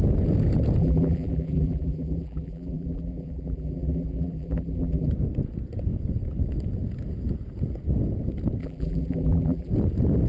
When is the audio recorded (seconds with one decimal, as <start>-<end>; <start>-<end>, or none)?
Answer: 0.0-0.8; 5.1-8.6; 9.7-10.3